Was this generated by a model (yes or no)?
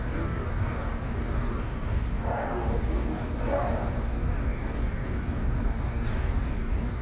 yes